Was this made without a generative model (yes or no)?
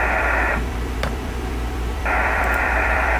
no